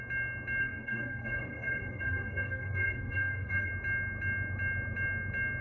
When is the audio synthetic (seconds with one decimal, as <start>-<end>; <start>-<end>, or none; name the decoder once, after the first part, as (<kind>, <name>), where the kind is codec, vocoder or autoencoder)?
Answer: 0.6-3.7 (codec, DAC)